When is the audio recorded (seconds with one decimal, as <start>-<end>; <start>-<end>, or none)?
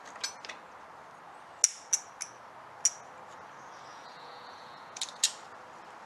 0.0-3.9; 5.0-6.1